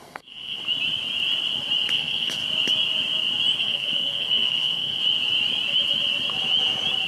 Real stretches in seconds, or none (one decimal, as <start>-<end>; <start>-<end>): 0.6-1.9; 2.4-3.6; 5.0-7.1

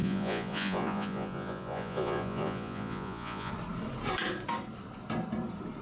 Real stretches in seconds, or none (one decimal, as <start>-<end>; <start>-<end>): 3.5-5.8

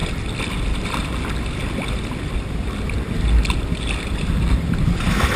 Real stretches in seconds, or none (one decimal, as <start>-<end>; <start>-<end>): 0.0-5.4

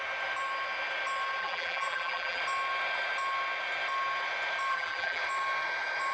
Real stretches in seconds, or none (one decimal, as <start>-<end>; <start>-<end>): 0.0-1.4; 2.4-4.7; 5.2-6.1

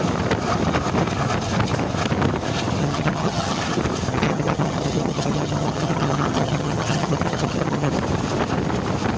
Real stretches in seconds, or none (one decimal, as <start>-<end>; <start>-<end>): 0.0-2.8; 3.6-4.1; 7.9-9.2

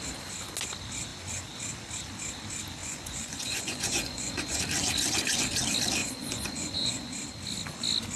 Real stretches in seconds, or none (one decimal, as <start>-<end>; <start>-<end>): 0.0-2.8; 4.6-6.0; 7.1-8.2

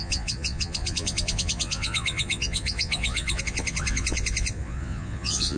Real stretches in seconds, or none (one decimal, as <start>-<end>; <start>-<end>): none